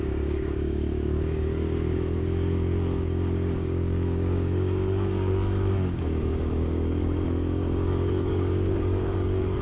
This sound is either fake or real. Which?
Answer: fake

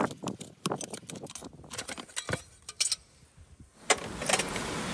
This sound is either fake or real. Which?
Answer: real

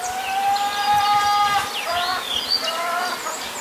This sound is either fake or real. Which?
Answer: real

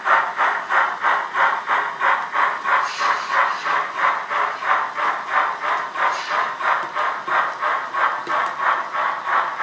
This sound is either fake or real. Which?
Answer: real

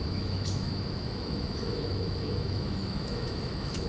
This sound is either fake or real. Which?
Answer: fake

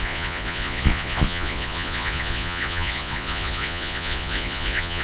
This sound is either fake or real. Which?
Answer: fake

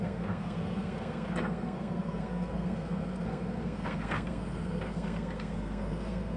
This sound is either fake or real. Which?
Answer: fake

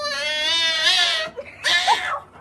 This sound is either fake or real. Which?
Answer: real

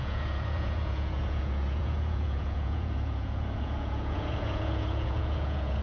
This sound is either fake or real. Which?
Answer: fake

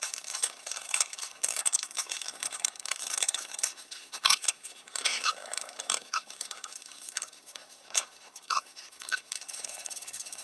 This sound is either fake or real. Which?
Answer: fake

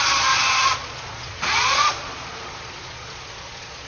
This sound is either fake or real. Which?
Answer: fake